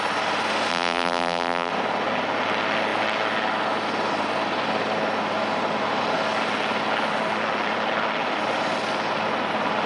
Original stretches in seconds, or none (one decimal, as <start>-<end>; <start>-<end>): 0.0-0.7; 1.7-9.9